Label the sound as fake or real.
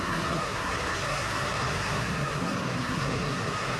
fake